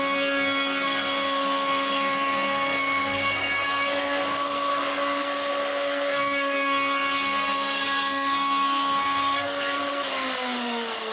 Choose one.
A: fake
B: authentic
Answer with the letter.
A